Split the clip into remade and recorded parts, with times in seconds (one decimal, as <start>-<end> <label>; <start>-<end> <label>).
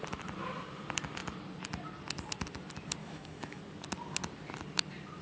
0.0-3.0 recorded; 3.0-3.6 remade; 3.6-5.2 recorded